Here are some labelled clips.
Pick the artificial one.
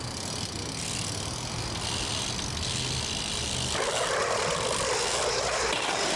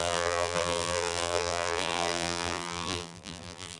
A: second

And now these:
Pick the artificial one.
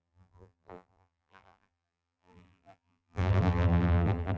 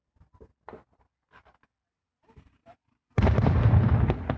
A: first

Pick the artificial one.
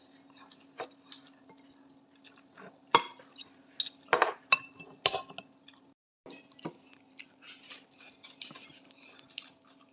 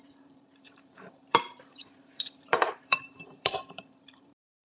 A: second